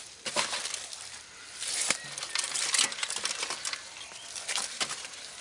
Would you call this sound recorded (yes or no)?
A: yes